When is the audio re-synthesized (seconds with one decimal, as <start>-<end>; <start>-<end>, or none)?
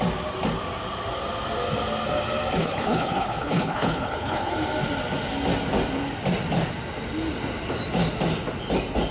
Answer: 2.6-4.5